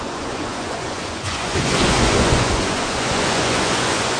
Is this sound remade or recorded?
remade